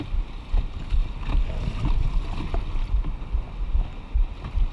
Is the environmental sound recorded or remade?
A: recorded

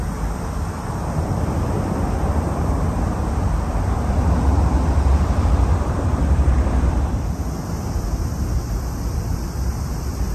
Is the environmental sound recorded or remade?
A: remade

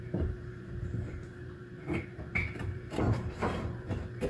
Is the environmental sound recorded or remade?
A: remade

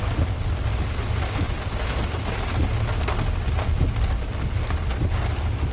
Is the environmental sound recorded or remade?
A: recorded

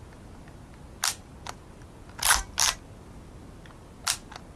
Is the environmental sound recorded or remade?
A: recorded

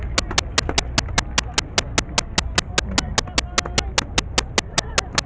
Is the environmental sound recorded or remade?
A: recorded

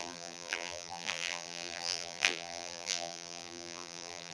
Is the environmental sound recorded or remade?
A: remade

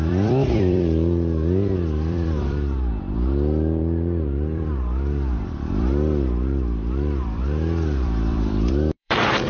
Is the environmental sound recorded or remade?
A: remade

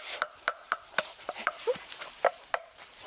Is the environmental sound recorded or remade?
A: remade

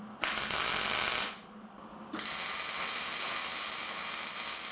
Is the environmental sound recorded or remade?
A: remade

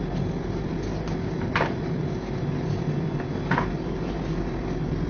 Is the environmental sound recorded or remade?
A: recorded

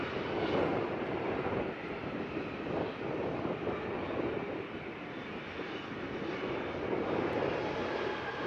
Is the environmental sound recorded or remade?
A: recorded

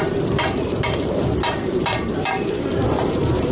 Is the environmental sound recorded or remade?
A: remade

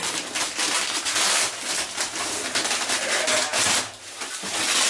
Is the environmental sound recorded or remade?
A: recorded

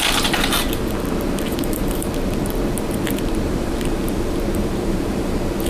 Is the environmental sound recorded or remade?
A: remade